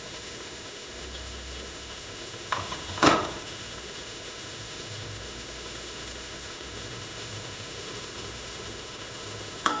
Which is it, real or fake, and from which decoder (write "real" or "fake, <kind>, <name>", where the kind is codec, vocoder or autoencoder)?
fake, autoencoder, DAC-VAE